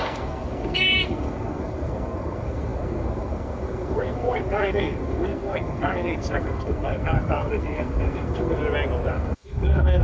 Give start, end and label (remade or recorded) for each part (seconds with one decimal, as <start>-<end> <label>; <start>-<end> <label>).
0.0-8.6 remade; 8.6-9.1 recorded; 9.1-10.0 remade